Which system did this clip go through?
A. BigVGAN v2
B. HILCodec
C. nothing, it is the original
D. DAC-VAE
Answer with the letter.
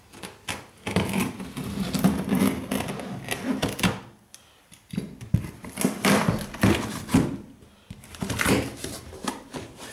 C